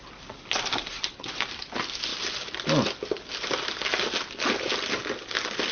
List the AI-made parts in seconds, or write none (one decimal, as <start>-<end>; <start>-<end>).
none